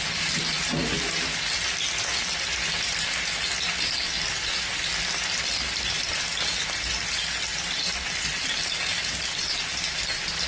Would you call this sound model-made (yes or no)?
no